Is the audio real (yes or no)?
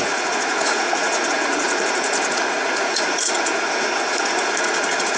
no